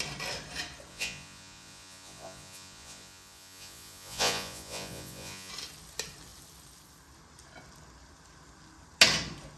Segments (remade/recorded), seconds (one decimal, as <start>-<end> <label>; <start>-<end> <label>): 0.0-0.9 recorded; 0.9-5.5 remade; 5.5-9.6 recorded